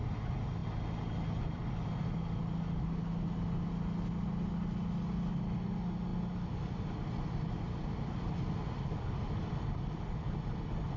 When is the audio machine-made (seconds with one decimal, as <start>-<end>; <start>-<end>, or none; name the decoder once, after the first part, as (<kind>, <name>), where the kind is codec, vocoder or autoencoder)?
none